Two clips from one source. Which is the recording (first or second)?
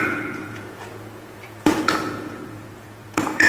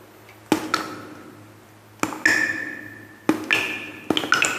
second